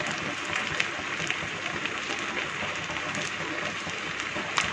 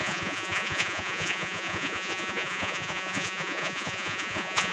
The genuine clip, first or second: first